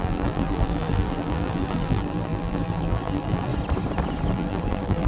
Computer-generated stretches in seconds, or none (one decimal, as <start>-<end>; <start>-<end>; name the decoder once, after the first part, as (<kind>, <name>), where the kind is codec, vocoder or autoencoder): 0.0-3.5 (vocoder, BigVGAN v2); 4.3-5.1

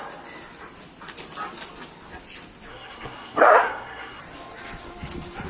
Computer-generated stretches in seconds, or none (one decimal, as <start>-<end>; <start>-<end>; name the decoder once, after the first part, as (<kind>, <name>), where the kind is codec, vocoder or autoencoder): 2.7-4.2 (codec, SNAC)

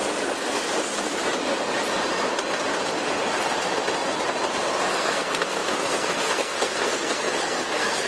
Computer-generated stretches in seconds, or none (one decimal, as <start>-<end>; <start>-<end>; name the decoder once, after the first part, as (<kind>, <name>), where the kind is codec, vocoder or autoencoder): 4.9-8.1 (codec, SNAC)

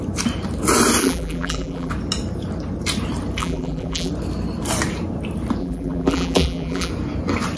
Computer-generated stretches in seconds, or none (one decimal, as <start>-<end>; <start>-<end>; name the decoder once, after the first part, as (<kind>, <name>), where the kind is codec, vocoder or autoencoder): 1.0-1.9 (vocoder, BigVGAN v2); 3.4-4.1; 5.6-6.9

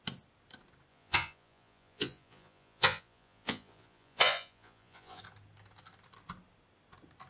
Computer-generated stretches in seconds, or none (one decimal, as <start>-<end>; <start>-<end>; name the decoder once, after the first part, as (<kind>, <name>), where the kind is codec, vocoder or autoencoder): 0.9-5.2 (vocoder, Vocos)

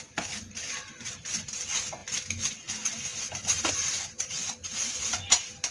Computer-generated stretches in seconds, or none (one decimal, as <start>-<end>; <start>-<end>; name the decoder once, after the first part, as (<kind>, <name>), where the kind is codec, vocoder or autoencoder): none